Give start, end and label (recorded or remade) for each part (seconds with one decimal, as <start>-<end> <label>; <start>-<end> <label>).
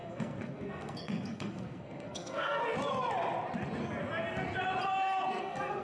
0.0-2.6 remade; 2.6-5.3 recorded; 5.3-5.8 remade